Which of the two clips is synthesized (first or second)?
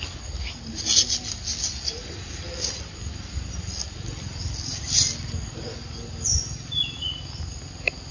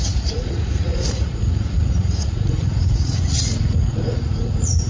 second